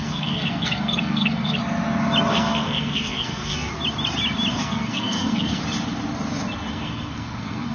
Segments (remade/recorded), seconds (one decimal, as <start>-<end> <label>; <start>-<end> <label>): 0.0-1.6 remade; 1.6-2.3 recorded; 2.3-3.7 remade; 3.7-4.5 recorded; 4.5-5.6 remade; 5.6-6.7 recorded; 6.7-7.7 remade